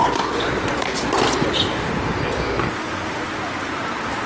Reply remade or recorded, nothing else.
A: recorded